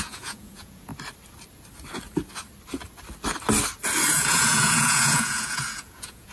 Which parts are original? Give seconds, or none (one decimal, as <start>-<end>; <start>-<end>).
0.9-4.1